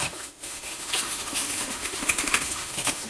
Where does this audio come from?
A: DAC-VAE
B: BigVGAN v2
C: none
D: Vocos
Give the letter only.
A